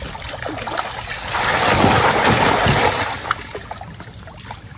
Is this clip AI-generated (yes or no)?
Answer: no